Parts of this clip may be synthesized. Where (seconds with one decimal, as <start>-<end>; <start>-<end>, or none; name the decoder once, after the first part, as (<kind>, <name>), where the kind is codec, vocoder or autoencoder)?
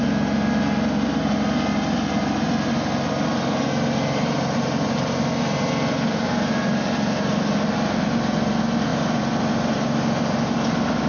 none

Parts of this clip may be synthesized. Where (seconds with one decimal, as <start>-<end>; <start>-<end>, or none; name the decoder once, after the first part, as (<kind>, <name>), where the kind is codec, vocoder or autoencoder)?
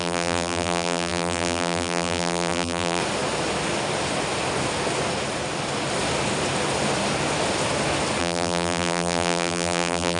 0.0-3.0 (vocoder, BigVGAN v2); 8.2-10.2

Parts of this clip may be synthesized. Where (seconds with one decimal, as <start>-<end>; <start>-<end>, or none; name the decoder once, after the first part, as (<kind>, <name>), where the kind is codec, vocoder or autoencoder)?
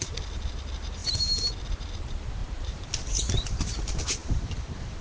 2.4-3.0 (vocoder, BigVGAN v2)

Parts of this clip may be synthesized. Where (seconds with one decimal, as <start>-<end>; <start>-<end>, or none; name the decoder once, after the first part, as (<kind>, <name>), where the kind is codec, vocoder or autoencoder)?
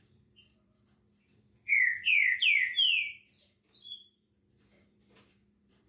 0.0-2.4 (vocoder, BigVGAN v2); 3.1-5.9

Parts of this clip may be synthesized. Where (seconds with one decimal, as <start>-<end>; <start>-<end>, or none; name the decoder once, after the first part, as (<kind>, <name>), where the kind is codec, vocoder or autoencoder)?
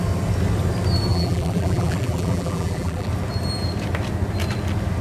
1.1-3.1 (vocoder, BigVGAN v2)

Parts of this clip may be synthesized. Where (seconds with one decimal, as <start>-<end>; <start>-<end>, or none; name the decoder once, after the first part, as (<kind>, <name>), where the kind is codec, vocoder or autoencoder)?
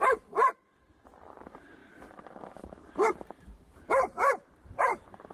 0.0-5.3 (vocoder, BigVGAN v2)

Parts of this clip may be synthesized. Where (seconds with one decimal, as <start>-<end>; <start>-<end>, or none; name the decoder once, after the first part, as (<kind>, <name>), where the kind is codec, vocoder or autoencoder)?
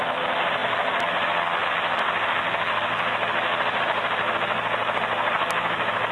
none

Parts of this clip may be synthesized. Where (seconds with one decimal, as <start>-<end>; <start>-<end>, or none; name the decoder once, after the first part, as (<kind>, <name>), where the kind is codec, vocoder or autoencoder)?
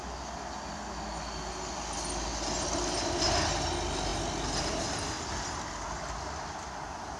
none